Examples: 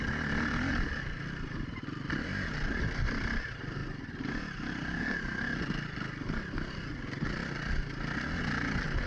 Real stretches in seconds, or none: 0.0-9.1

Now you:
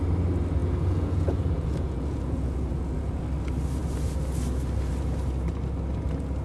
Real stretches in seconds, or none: 0.0-0.6; 3.2-6.4